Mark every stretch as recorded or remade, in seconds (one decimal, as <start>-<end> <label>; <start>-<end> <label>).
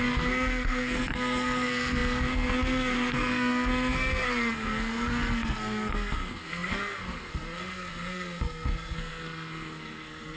0.0-10.4 remade